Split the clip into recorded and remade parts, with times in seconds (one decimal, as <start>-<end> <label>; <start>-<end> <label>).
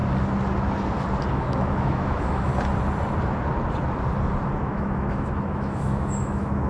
0.0-1.3 recorded; 1.3-2.5 remade; 2.5-4.5 recorded; 4.5-6.7 remade